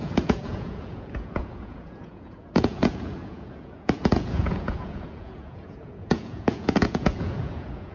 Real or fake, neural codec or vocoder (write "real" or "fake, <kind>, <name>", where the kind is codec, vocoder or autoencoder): fake, vocoder, Vocos